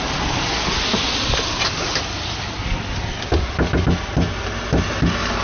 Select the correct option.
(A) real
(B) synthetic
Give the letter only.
A